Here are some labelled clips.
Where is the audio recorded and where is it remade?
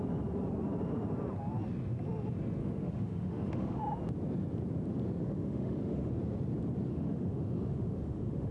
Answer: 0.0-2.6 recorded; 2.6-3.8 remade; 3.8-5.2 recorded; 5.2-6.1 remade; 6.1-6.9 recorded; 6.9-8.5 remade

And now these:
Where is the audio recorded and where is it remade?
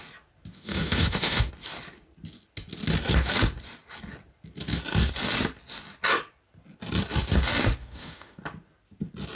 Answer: 0.0-0.5 recorded; 0.5-1.5 remade; 1.5-7.8 recorded; 7.8-8.4 remade; 8.4-9.4 recorded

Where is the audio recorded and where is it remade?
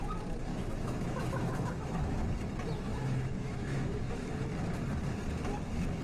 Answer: 0.0-0.5 recorded; 0.5-2.2 remade; 2.2-2.9 recorded; 2.9-4.3 remade; 4.3-6.0 recorded